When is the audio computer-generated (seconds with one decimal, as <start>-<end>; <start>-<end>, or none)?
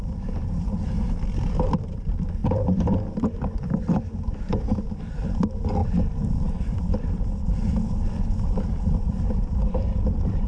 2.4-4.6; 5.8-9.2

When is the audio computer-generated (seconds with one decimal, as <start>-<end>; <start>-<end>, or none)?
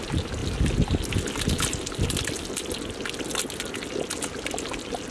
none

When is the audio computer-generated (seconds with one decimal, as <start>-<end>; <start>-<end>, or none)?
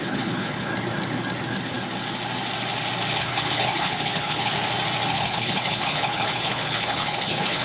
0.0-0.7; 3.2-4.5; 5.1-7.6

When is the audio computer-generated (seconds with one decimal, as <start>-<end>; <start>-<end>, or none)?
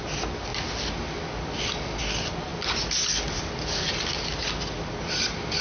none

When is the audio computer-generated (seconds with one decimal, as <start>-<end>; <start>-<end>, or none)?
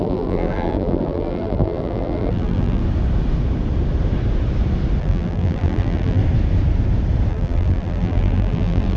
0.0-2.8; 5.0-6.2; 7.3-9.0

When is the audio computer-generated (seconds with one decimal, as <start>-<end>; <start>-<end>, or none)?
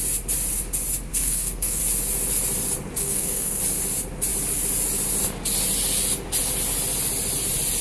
1.1-1.8; 3.0-3.6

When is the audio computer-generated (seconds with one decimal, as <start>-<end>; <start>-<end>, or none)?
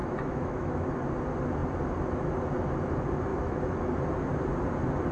0.0-0.9; 3.3-3.9